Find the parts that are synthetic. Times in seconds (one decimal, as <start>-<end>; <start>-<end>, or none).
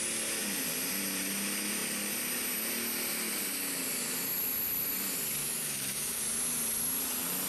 5.4-6.2